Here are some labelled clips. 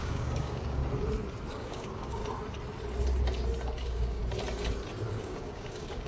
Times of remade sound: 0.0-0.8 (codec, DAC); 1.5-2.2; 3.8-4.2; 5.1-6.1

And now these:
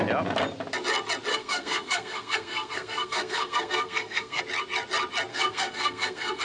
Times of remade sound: 1.3-4.4 (codec, SNAC); 5.3-6.4

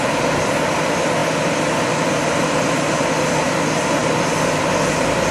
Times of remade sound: 1.2-3.1 (vocoder, BigVGAN v2)

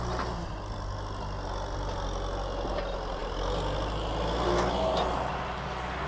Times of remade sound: none

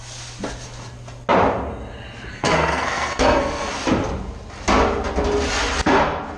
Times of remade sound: 2.3-3.7 (codec, SNAC)

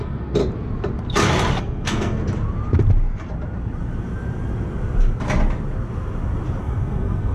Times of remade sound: 0.0-0.4 (codec, SNAC); 1.6-2.2; 6.6-7.3

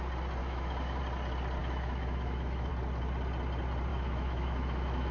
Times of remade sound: 0.4-1.0 (autoencoder, DAC-VAE); 1.6-2.7; 3.9-5.1